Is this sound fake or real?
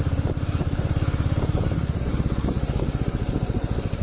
real